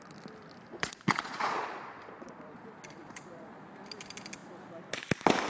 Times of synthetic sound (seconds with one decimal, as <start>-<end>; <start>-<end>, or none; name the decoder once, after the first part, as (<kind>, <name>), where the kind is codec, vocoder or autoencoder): 0.7-2.6 (vocoder, Vocos); 3.0-3.6